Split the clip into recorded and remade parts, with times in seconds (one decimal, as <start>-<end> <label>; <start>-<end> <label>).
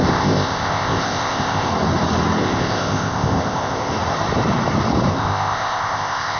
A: 0.0-1.7 remade; 1.7-2.4 recorded; 2.4-3.9 remade; 3.9-5.1 recorded; 5.1-6.4 remade